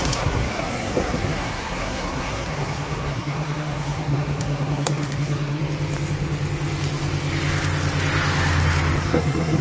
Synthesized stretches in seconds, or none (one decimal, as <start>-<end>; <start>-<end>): 0.0-5.6; 9.0-9.6